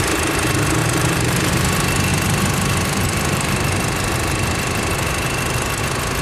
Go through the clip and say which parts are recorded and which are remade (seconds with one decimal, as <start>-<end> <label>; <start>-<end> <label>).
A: 0.0-0.8 recorded; 0.8-1.5 remade; 1.5-2.1 recorded; 2.1-5.8 remade; 5.8-6.2 recorded